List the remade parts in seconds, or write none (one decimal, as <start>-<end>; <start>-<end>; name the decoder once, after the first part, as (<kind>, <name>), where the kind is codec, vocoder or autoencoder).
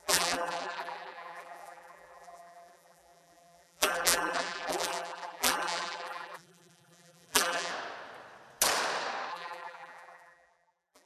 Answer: 0.0-7.7 (vocoder, BigVGAN v2); 9.3-11.1